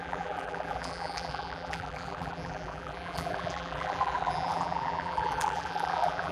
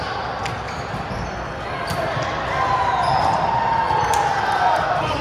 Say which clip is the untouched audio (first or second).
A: second